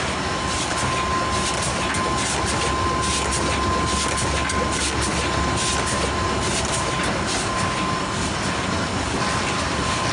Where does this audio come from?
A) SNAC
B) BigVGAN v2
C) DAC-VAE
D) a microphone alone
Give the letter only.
D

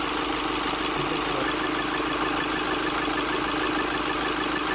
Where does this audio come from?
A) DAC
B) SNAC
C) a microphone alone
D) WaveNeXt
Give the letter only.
C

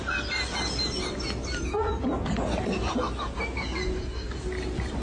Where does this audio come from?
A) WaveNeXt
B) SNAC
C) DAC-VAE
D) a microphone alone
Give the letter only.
D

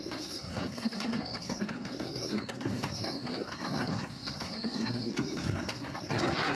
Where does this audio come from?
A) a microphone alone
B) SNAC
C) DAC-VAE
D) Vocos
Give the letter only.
B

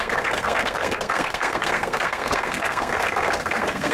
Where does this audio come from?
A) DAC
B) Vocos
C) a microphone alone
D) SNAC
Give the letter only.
D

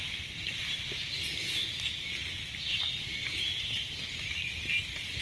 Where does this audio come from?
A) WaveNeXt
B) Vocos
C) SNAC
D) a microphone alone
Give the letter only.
D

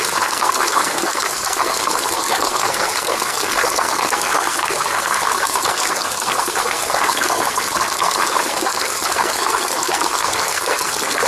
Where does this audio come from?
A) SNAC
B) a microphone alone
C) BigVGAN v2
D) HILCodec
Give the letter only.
A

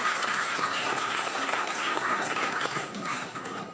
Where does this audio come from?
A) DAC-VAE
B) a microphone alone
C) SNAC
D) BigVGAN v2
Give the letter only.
C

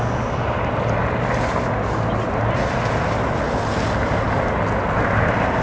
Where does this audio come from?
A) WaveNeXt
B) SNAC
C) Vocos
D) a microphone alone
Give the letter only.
D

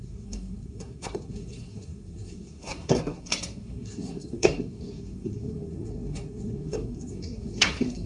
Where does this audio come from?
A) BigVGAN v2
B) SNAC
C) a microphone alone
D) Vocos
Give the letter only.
B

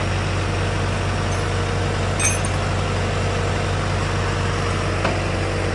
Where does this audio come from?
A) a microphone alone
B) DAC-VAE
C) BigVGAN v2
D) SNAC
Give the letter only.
A